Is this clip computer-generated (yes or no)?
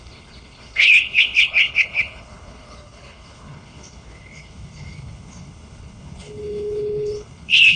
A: yes